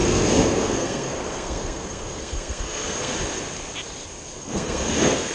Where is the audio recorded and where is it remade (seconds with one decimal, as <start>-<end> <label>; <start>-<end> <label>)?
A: 0.0-3.1 remade; 3.1-4.4 recorded; 4.4-5.3 remade